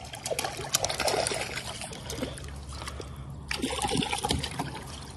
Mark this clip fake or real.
real